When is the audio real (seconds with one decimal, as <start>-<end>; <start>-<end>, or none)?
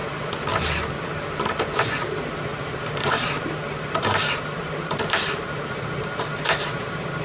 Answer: 0.0-2.5; 6.8-7.2